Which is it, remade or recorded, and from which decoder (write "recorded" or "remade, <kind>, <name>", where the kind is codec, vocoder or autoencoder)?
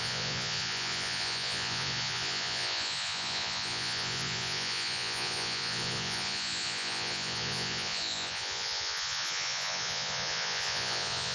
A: remade, vocoder, Vocos